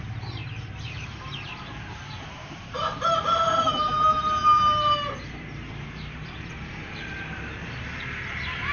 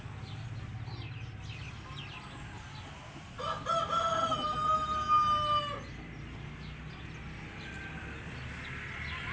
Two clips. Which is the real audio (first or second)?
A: second